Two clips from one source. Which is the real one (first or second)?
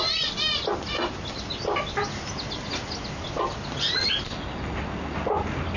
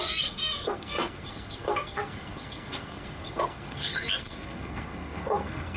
first